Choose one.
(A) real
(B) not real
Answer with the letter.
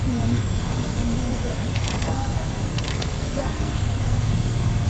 B